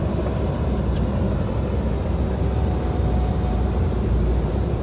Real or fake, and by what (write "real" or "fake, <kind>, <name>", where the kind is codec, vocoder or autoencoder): fake, vocoder, BigVGAN v2